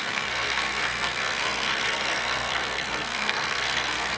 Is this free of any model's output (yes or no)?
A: no